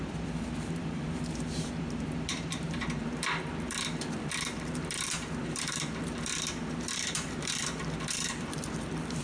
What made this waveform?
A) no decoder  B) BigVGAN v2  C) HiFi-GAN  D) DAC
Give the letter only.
B